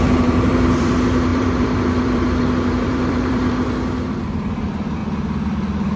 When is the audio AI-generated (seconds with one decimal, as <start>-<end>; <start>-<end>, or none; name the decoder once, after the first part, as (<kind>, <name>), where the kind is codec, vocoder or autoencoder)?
0.0-5.0 (vocoder, BigVGAN v2)